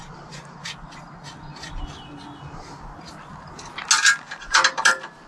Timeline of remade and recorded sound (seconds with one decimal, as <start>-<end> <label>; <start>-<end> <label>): 0.0-5.3 recorded